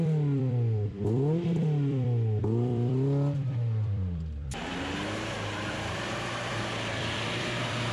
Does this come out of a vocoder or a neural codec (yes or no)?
yes